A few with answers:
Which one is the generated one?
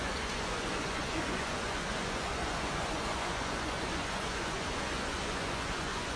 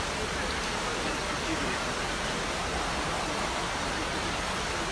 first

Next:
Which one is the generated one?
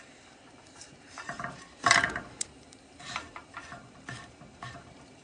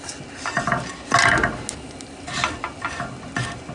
first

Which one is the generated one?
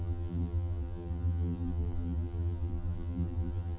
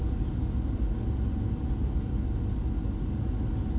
first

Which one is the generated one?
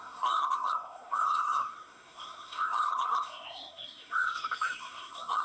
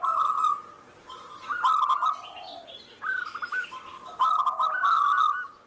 first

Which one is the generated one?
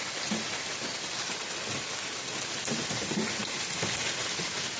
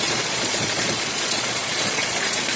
second